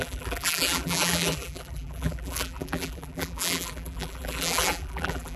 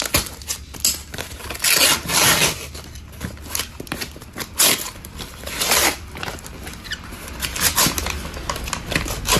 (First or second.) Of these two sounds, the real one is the second